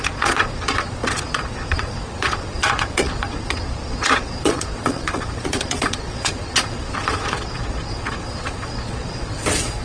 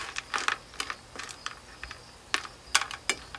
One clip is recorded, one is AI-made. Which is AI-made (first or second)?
first